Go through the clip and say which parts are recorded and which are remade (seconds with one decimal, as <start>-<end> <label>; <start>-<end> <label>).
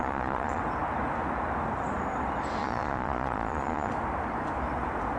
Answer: 0.0-0.6 remade; 0.6-2.6 recorded; 2.6-3.9 remade; 3.9-5.2 recorded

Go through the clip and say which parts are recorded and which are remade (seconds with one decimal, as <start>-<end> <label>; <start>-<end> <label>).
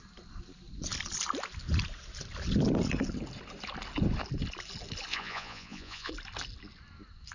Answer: 0.0-5.1 recorded; 5.1-6.1 remade; 6.1-7.3 recorded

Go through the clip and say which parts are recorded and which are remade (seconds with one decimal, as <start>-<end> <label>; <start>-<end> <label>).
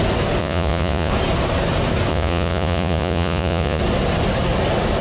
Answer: 0.0-0.4 recorded; 0.4-1.1 remade; 1.1-2.1 recorded; 2.1-3.8 remade; 3.8-5.0 recorded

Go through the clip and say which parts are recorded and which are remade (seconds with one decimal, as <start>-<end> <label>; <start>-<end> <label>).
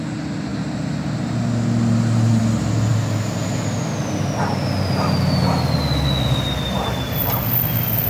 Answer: 0.0-8.1 recorded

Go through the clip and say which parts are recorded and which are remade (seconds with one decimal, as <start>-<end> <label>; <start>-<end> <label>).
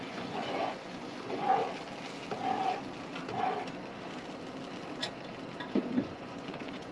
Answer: 0.0-1.6 remade; 1.6-5.7 recorded; 5.7-6.9 remade